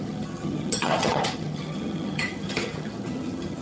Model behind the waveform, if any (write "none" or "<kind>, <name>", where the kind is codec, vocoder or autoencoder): vocoder, HiFi-GAN